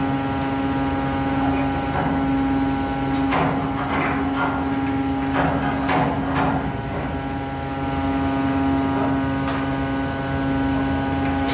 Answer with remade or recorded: recorded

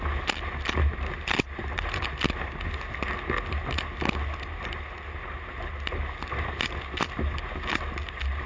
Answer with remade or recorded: recorded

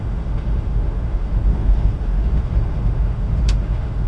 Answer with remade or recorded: remade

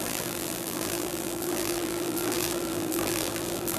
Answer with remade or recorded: remade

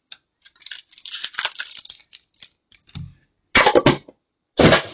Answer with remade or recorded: recorded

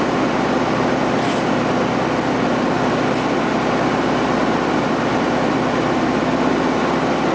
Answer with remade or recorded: recorded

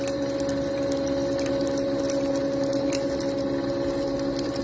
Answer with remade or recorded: recorded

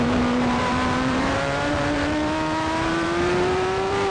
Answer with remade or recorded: remade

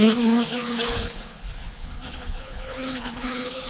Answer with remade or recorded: remade